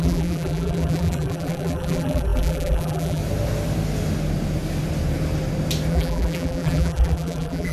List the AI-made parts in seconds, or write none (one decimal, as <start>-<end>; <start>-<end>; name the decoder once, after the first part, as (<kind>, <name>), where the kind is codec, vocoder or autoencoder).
0.0-3.2 (vocoder, BigVGAN v2); 5.9-7.7